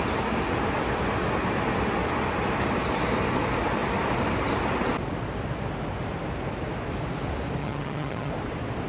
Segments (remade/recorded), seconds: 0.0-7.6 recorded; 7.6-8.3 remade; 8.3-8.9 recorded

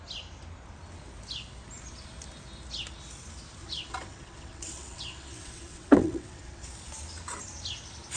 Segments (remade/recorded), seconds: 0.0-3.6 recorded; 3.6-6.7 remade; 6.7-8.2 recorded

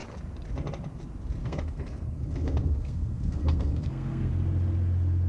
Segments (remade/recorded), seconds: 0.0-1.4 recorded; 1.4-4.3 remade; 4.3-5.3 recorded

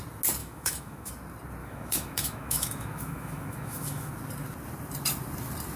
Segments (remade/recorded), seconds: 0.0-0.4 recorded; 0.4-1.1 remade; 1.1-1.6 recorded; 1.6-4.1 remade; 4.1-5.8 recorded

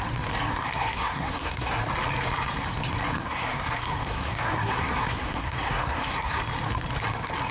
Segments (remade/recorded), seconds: 0.0-0.5 recorded; 0.5-1.8 remade; 1.8-3.1 recorded; 3.1-6.4 remade; 6.4-7.5 recorded

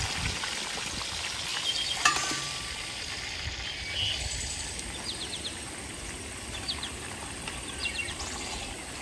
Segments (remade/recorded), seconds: 0.0-1.5 recorded; 1.5-3.2 remade; 3.2-9.0 recorded